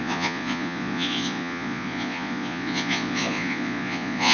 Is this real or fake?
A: fake